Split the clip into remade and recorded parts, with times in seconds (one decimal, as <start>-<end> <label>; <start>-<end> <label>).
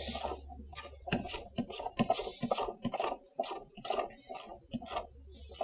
0.0-0.7 recorded; 0.7-4.1 remade; 4.1-5.6 recorded